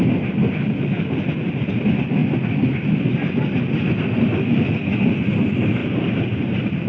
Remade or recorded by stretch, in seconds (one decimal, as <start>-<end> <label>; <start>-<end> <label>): 0.0-5.8 recorded; 5.8-6.9 remade